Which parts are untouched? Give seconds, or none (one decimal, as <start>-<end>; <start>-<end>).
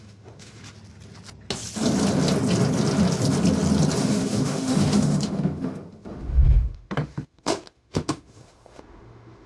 0.6-4.0